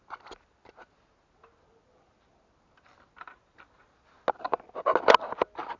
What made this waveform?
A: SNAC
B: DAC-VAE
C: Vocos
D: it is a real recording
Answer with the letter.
D